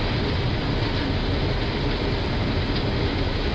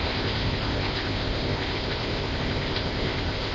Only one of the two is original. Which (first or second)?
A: first